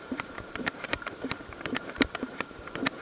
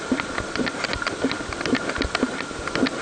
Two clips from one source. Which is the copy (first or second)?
first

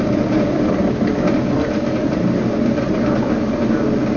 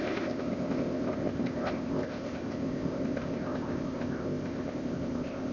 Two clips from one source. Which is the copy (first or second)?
second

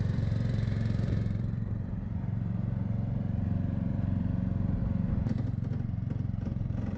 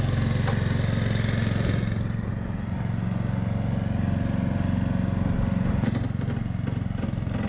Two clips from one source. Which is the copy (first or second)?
first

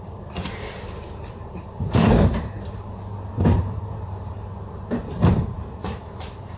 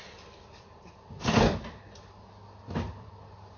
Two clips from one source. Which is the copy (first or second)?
first